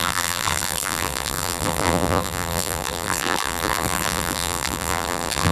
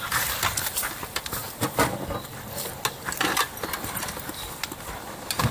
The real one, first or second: second